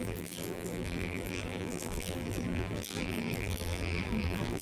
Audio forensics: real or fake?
fake